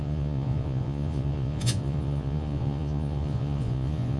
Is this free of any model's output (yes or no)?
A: no